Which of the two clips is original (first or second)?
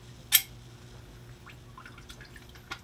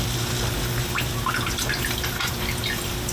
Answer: first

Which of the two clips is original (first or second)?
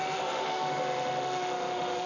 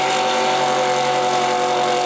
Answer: second